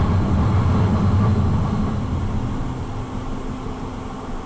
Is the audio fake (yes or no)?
no